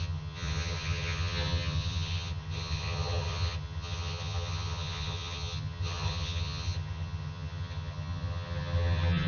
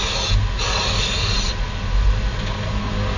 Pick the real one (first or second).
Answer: second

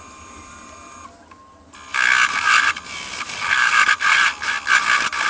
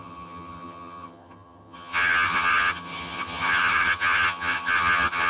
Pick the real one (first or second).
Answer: first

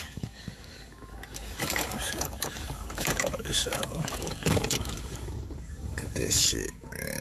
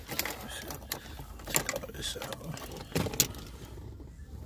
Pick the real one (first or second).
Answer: second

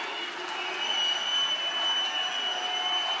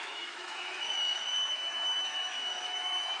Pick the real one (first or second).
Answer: first